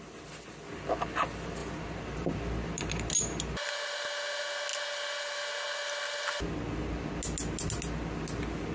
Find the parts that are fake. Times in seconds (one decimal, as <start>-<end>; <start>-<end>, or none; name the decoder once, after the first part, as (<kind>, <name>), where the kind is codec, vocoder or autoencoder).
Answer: none